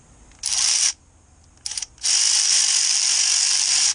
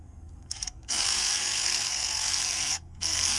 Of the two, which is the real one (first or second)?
first